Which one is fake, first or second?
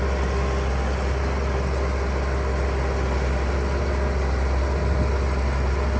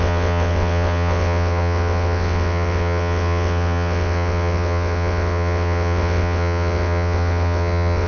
second